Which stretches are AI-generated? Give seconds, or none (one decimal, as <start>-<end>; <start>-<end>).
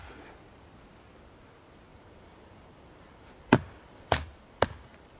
1.9-5.2